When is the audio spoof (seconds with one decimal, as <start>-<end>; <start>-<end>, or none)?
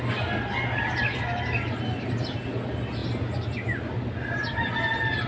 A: none